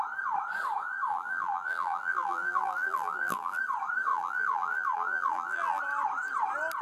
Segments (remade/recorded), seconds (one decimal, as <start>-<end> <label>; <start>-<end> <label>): 0.0-1.1 recorded; 1.1-3.6 remade; 3.6-4.1 recorded; 4.1-5.8 remade; 5.8-6.8 recorded